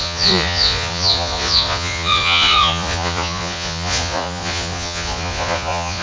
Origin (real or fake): fake